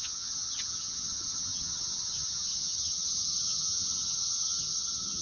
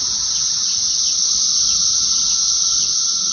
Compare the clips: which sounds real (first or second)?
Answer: second